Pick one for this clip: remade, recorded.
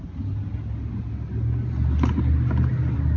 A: recorded